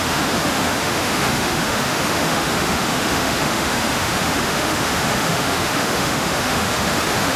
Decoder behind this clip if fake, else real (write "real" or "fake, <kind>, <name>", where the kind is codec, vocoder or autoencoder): fake, autoencoder, DAC-VAE